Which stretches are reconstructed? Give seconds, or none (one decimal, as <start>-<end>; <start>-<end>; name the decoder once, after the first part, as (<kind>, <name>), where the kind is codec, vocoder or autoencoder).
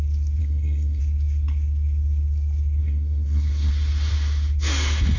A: 0.4-1.0 (codec, SNAC); 2.8-3.7